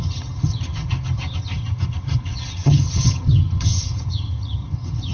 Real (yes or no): no